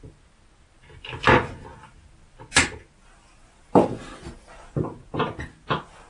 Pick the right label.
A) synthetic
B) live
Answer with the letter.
B